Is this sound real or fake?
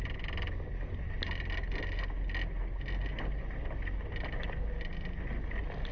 real